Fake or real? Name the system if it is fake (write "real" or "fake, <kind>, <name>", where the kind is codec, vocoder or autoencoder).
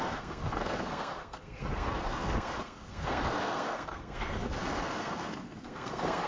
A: fake, codec, SNAC